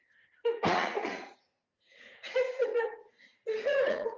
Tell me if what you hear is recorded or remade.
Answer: remade